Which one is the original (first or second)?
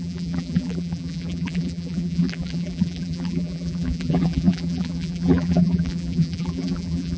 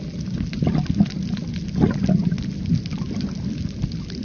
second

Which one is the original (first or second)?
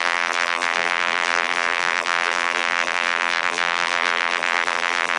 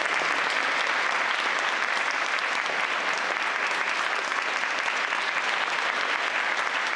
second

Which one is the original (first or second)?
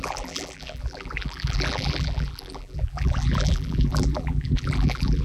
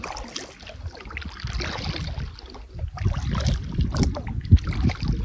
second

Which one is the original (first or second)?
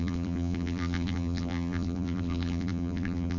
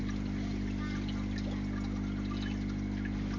second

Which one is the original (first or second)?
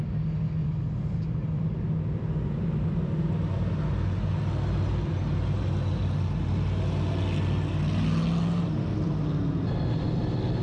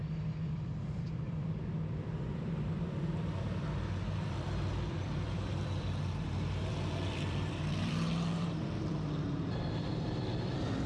first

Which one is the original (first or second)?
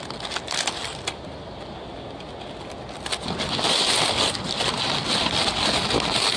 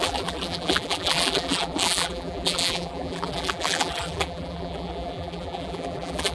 first